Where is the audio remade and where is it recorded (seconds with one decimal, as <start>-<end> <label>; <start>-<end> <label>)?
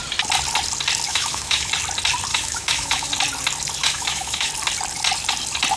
0.0-1.1 recorded; 1.1-1.7 remade; 1.7-2.3 recorded; 2.3-3.1 remade; 3.1-3.8 recorded; 3.8-4.5 remade; 4.5-5.8 recorded